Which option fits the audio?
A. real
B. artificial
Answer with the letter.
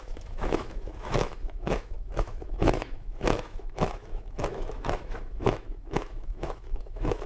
B